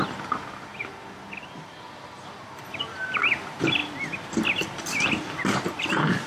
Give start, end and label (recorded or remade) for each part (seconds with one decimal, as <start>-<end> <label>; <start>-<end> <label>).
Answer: 0.0-3.8 remade; 3.8-6.3 recorded